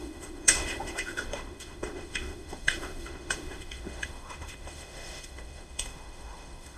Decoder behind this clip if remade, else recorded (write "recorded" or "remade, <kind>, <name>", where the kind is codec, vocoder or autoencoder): remade, autoencoder, DAC-VAE